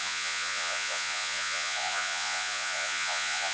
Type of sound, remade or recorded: remade